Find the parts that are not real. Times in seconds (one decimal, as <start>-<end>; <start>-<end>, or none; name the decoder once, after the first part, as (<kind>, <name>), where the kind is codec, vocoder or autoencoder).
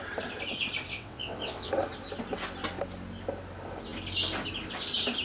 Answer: 0.9-1.7 (vocoder, WaveNeXt)